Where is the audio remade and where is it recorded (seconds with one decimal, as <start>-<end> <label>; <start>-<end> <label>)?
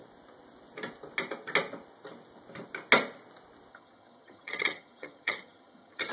0.0-3.7 recorded; 3.7-6.1 remade